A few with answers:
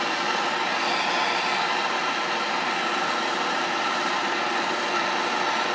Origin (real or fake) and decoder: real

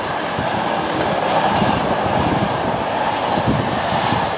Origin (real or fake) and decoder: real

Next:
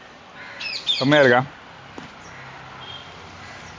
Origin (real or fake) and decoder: real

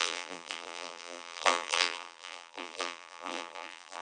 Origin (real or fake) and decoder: fake, vocoder, BigVGAN v2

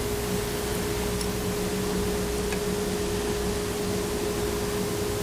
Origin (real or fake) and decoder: real